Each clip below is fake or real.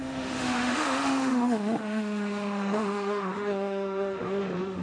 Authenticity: fake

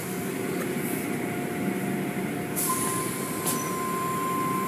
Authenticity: real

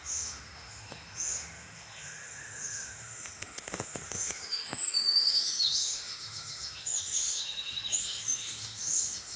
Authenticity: fake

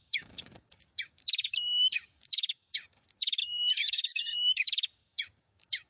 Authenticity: fake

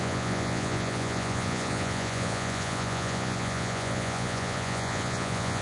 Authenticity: fake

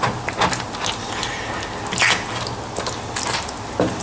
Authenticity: real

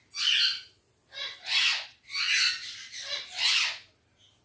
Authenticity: real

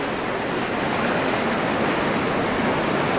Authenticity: real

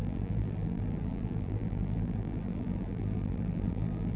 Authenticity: fake